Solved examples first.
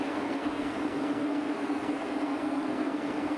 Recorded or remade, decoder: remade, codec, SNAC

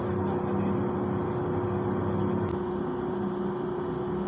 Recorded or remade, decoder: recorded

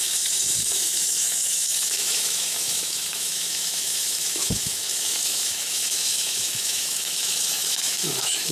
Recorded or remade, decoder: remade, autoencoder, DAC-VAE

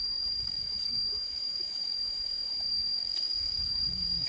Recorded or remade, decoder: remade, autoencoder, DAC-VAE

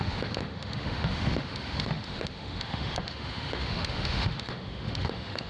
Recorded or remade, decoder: remade, autoencoder, DAC-VAE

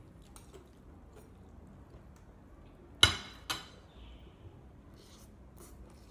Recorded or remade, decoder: recorded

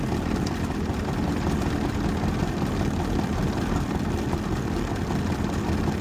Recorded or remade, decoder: recorded